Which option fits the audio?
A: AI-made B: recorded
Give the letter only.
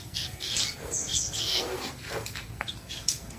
A